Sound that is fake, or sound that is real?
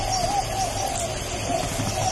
real